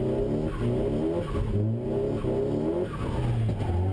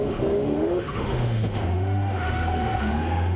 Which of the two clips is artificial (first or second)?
second